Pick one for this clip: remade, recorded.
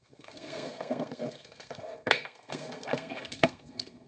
remade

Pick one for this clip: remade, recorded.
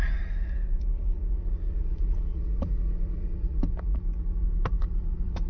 remade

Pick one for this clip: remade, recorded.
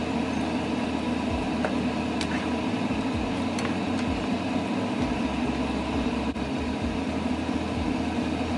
recorded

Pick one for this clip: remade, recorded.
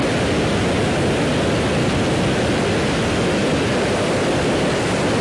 recorded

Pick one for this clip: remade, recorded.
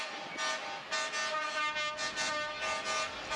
recorded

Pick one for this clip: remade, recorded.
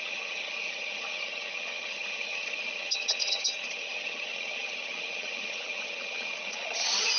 remade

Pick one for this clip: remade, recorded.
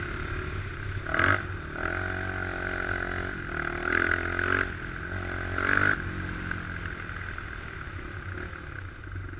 recorded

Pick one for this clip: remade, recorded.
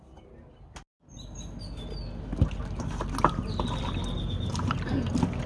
recorded